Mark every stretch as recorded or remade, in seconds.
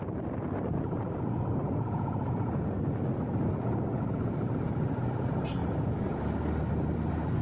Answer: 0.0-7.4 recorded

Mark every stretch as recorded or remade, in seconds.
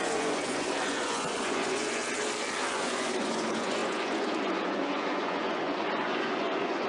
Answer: 0.0-2.0 remade; 2.0-2.7 recorded; 2.7-6.9 remade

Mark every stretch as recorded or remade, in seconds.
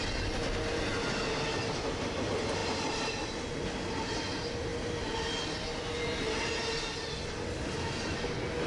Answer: 0.0-8.7 recorded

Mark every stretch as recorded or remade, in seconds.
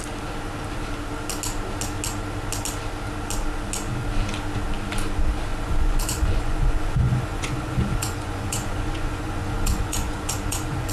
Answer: 0.0-5.5 recorded; 5.5-10.9 remade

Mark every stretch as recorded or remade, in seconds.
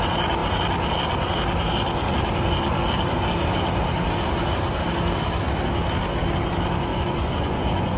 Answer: 0.0-6.9 recorded; 6.9-8.0 remade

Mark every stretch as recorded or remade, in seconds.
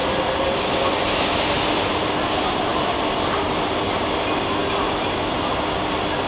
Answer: 0.0-6.3 recorded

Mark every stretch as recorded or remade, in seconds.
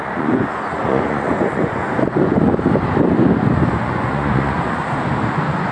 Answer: 0.0-2.4 remade; 2.4-3.7 recorded; 3.7-4.8 remade; 4.8-5.3 recorded; 5.3-5.7 remade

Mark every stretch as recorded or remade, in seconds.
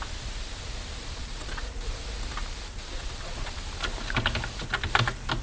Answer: 0.0-1.2 recorded; 1.2-1.7 remade; 1.7-2.8 recorded; 2.8-3.5 remade; 3.5-5.4 recorded